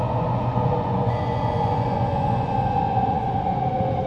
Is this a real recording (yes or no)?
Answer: no